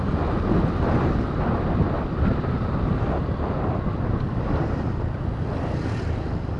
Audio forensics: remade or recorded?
recorded